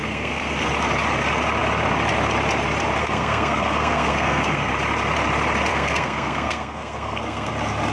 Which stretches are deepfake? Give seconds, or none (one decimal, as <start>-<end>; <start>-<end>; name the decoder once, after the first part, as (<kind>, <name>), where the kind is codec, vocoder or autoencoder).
0.0-0.7 (codec, SNAC); 3.0-4.7; 5.7-7.5